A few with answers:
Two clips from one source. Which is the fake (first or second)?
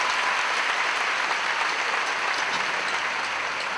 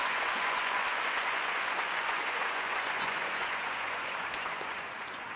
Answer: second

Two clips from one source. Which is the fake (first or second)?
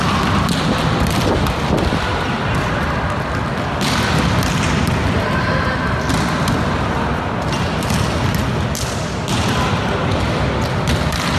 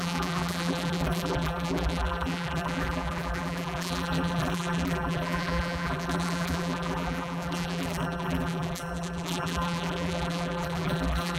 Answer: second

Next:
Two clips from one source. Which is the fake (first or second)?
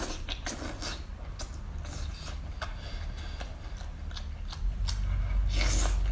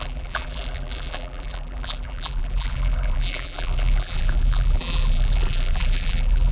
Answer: second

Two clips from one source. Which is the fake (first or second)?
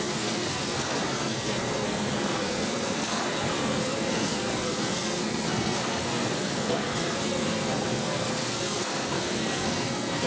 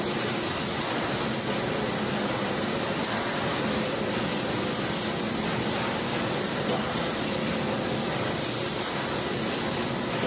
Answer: first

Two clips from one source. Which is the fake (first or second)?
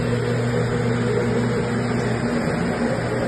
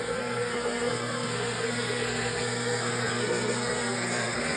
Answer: second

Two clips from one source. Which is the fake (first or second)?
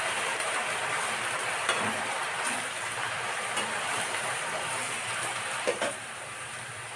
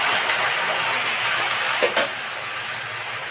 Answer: first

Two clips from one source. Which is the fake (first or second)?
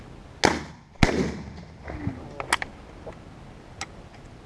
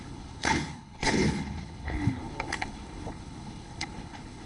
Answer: second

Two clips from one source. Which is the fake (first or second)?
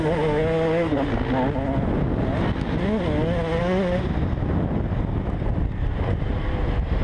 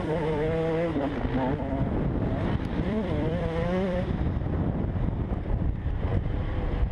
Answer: second